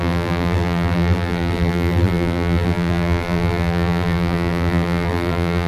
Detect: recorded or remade remade